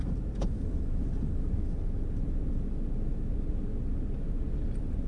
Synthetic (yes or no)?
no